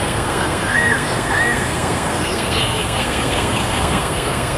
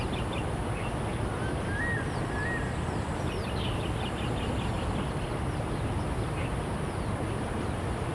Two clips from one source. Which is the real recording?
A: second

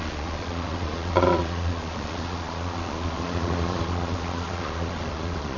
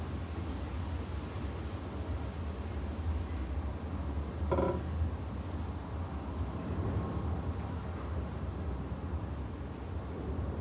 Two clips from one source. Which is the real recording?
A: second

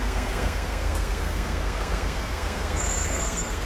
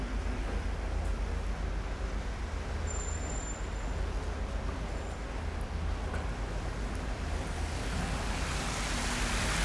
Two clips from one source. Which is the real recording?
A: second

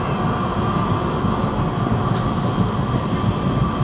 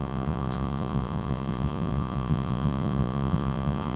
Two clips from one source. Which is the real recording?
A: first